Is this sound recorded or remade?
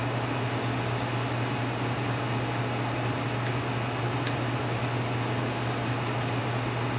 recorded